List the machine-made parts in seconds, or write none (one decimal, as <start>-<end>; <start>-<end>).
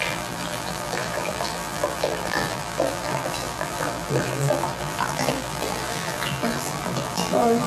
0.0-7.7